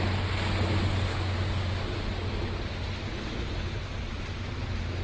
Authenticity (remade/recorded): recorded